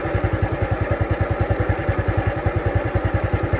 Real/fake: real